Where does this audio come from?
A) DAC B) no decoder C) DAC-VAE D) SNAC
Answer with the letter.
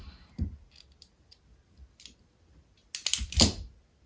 B